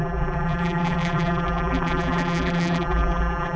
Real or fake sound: fake